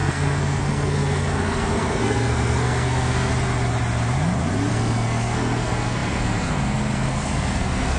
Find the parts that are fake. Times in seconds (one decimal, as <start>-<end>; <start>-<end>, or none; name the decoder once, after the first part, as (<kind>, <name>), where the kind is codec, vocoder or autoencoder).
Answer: 0.0-3.3 (codec, SNAC); 4.7-8.0